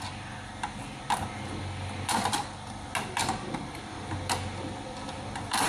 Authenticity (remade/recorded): recorded